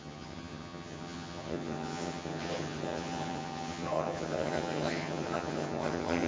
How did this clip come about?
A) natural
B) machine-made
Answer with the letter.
B